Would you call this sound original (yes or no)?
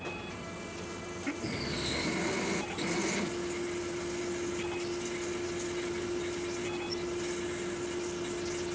yes